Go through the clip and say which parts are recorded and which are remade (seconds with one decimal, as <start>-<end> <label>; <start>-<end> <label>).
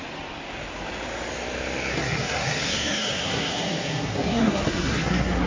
0.0-1.9 recorded; 1.9-5.5 remade